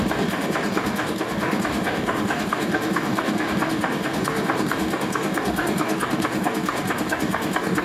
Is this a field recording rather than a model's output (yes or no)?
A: no